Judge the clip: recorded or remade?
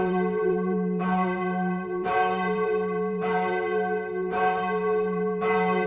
remade